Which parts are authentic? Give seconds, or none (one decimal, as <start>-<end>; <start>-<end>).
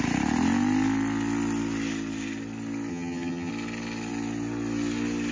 0.0-2.9; 3.5-5.3